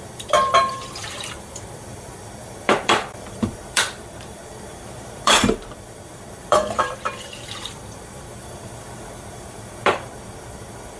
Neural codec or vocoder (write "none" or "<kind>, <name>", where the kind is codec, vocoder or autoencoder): vocoder, BigVGAN v2